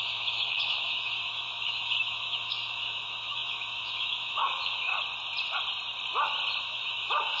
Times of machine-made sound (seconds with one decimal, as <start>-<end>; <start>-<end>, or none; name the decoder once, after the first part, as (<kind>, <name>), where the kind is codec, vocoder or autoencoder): 0.0-4.9 (autoencoder, DAC-VAE); 6.6-7.4